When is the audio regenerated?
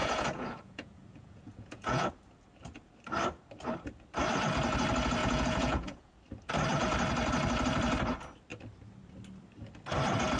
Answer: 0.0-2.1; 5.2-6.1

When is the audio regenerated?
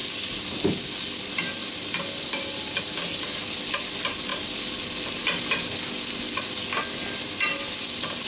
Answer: none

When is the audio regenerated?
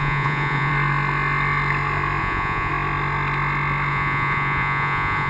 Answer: 0.0-0.7; 2.2-2.7; 3.9-5.3